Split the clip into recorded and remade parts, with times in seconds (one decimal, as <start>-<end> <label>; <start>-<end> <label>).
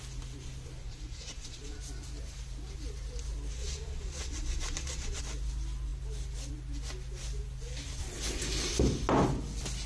0.0-0.8 recorded; 0.8-1.8 remade; 1.8-3.6 recorded; 3.6-5.2 remade; 5.2-9.9 recorded